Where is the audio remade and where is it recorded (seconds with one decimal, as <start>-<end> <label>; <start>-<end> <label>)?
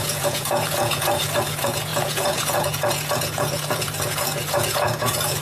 0.0-5.4 remade